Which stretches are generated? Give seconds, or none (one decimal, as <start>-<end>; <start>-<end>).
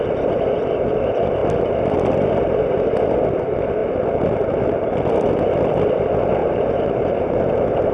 3.8-5.0; 6.4-7.4